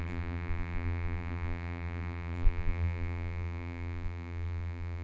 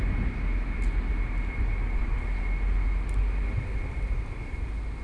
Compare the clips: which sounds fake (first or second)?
first